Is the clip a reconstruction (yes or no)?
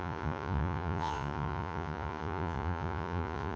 yes